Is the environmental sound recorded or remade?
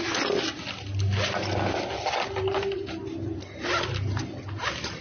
recorded